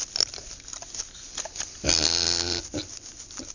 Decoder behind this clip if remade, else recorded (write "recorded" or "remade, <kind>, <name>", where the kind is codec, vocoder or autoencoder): recorded